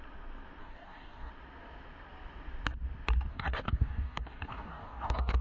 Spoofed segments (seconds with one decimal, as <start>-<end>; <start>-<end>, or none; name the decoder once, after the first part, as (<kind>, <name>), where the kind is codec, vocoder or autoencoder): 0.6-1.3 (codec, DAC); 3.3-5.4